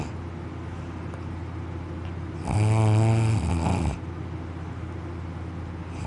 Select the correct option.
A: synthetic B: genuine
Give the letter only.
B